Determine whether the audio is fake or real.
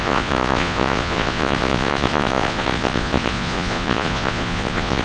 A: fake